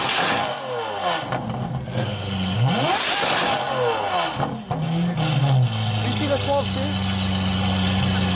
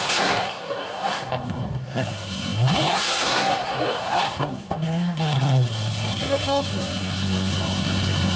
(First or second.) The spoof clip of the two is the second